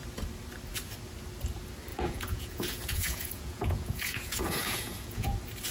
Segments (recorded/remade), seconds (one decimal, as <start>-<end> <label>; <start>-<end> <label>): 0.0-1.9 recorded; 1.9-5.3 remade; 5.3-5.7 recorded